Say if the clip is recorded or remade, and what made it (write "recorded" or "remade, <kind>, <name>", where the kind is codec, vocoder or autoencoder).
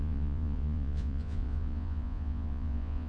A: remade, vocoder, Vocos